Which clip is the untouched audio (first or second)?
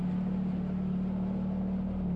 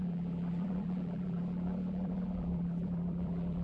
first